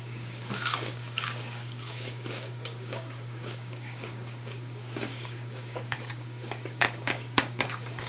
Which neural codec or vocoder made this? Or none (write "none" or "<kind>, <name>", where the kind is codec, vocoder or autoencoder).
codec, DAC